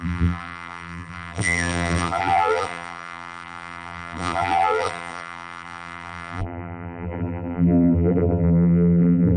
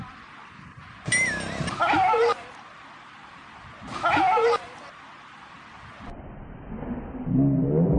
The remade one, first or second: first